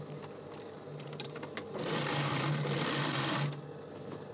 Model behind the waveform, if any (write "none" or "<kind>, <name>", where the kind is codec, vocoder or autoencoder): none